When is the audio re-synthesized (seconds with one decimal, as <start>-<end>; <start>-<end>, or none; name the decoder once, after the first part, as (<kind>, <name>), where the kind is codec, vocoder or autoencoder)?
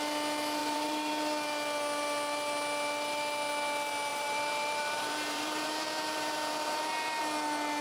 0.6-1.1 (vocoder, BigVGAN v2); 4.1-7.2